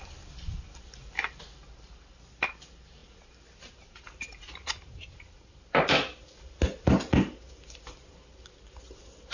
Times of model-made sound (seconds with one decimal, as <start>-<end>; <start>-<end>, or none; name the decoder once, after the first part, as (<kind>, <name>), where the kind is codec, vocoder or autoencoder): none